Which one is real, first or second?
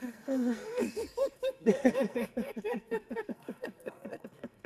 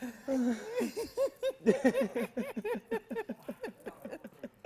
second